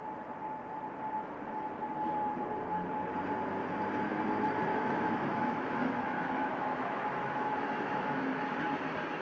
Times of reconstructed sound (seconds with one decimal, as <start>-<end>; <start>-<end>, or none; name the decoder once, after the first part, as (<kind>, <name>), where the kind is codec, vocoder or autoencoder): 4.7-8.6 (autoencoder, DAC-VAE)